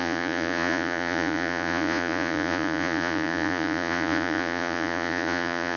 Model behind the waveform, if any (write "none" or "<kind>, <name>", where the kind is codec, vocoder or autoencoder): vocoder, Vocos